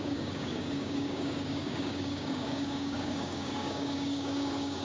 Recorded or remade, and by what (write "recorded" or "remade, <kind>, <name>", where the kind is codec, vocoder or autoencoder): remade, codec, DAC